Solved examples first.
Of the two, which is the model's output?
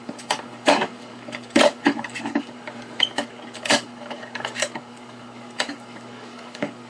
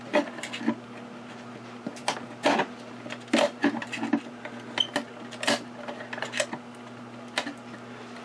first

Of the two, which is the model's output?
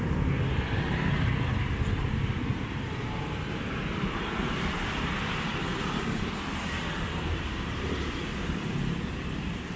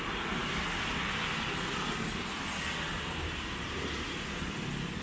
first